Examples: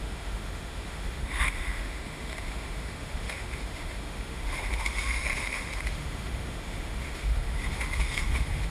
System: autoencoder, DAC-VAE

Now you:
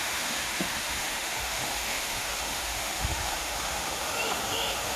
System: autoencoder, DAC-VAE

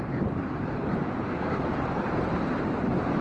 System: vocoder, BigVGAN v2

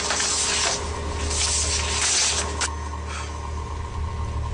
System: none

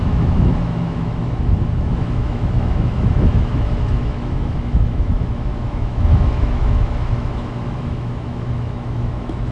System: autoencoder, DAC-VAE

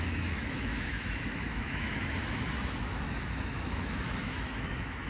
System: autoencoder, DAC-VAE